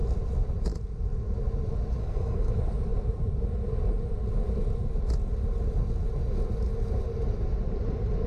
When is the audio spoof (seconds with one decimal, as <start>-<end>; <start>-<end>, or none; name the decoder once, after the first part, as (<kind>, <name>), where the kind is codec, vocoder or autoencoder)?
2.0-2.5 (codec, SNAC)